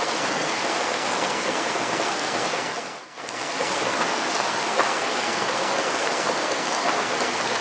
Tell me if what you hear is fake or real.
fake